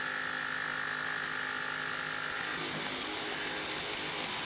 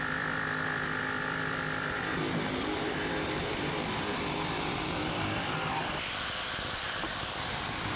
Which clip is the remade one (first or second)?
second